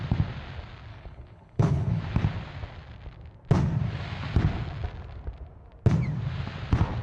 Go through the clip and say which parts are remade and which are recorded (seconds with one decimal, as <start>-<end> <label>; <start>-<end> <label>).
0.0-0.9 recorded; 0.9-2.0 remade; 2.0-7.0 recorded